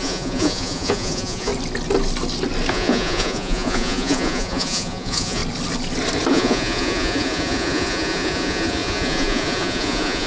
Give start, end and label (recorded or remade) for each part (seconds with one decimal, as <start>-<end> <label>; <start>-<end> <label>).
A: 0.0-1.5 remade; 1.5-2.7 recorded; 2.7-5.4 remade; 5.4-6.3 recorded; 6.3-10.3 remade